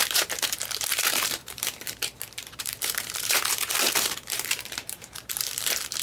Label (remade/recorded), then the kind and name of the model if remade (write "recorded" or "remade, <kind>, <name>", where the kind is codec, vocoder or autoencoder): remade, vocoder, BigVGAN v2